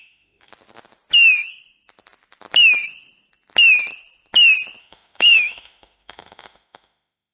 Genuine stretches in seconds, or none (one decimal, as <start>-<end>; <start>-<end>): 0.5-4.8